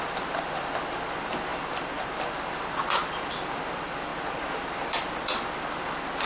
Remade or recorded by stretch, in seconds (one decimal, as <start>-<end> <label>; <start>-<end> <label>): 0.0-3.0 recorded; 3.0-3.6 remade; 3.6-4.1 recorded; 4.1-5.5 remade; 5.5-6.3 recorded